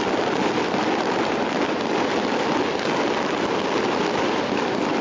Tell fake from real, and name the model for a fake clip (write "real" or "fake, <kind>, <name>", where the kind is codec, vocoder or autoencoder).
real